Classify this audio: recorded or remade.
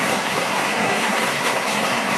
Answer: remade